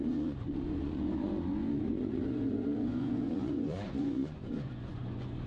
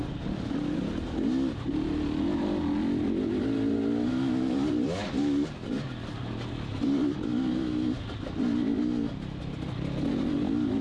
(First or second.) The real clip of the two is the second